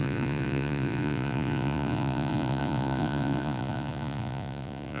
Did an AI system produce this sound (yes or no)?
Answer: yes